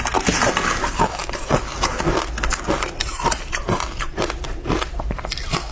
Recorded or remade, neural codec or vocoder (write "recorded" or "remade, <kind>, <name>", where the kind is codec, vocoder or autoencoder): recorded